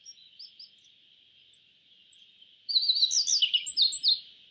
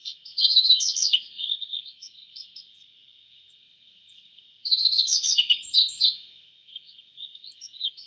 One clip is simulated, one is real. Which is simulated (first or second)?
second